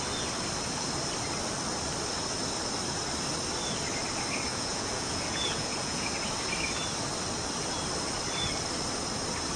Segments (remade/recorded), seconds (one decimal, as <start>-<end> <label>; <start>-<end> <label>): 0.0-4.5 recorded; 4.5-6.1 remade; 6.1-9.6 recorded